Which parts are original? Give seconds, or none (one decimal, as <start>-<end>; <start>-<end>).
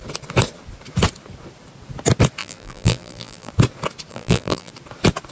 0.0-2.4; 3.5-4.1; 4.7-5.3